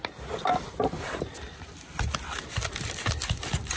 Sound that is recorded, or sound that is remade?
recorded